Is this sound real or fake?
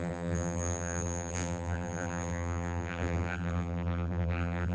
fake